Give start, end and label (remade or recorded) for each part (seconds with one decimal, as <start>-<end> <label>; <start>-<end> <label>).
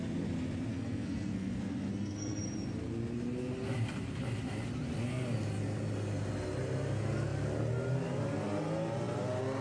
0.0-0.7 recorded; 0.7-2.4 remade; 2.4-9.6 recorded